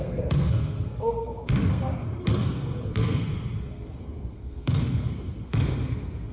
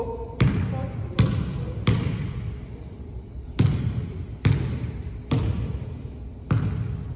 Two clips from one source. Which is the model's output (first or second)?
first